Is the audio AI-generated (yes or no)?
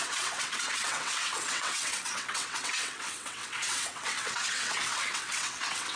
yes